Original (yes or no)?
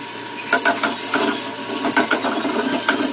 yes